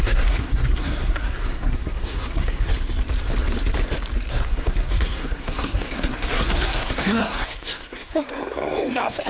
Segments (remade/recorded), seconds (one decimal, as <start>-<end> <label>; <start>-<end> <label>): 0.0-2.7 remade; 2.7-4.3 recorded; 4.3-9.3 remade